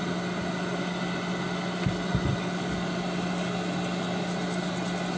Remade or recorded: recorded